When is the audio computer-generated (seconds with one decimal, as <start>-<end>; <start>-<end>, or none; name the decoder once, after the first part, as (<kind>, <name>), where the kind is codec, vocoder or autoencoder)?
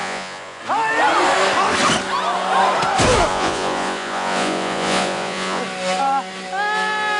0.0-0.6 (vocoder, Vocos); 3.3-5.6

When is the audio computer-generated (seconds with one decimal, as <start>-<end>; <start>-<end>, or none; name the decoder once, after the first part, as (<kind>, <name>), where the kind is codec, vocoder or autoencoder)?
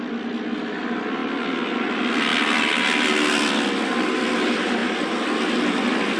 none